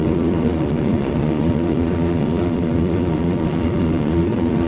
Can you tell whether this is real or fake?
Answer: fake